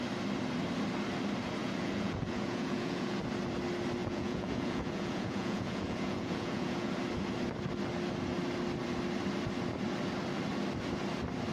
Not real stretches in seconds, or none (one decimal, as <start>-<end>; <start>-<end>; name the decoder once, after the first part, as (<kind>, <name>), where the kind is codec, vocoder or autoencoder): 1.6-3.2 (vocoder, Vocos); 4.0-6.9